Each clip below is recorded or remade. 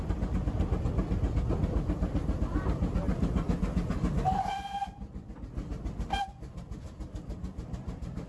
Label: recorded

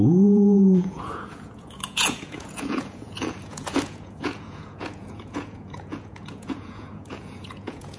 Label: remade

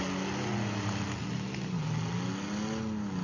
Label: recorded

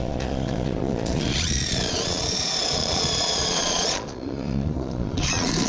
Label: remade